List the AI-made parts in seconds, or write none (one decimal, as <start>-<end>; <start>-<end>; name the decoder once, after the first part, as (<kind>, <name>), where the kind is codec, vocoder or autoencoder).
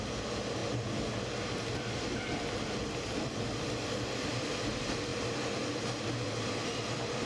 none